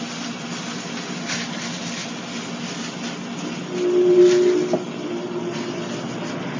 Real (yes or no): yes